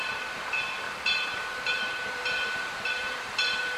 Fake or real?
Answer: fake